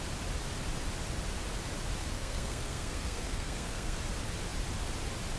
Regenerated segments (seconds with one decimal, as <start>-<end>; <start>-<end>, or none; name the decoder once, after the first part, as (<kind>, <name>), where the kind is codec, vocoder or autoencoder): 2.0-4.0 (codec, SNAC)